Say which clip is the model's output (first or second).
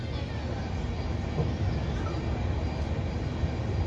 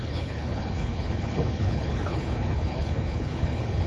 second